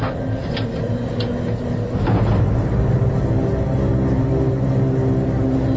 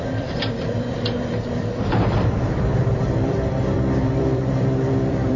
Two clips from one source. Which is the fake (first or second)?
second